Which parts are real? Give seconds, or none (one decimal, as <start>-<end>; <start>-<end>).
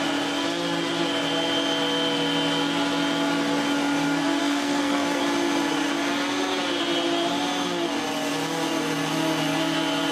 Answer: 0.0-4.4; 5.2-10.1